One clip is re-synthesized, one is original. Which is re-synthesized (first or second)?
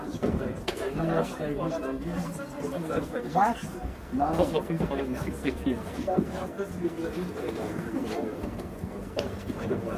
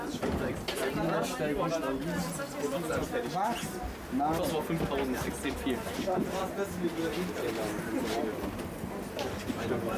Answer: first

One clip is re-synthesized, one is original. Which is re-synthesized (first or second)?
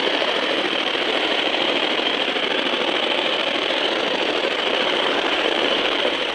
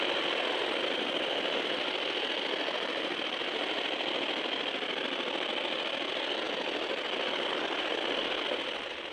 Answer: first